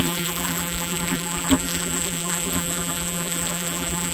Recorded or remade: remade